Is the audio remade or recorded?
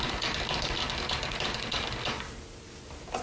recorded